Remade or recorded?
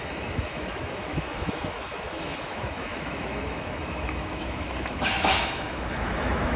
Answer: remade